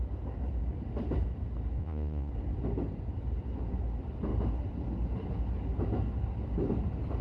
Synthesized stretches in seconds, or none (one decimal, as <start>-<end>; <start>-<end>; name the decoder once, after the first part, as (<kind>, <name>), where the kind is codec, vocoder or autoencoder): 1.8-2.3 (vocoder, Vocos)